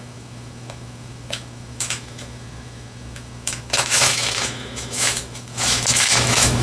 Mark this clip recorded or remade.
remade